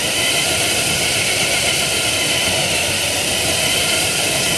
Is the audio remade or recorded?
remade